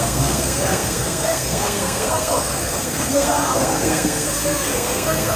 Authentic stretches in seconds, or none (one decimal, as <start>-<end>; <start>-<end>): none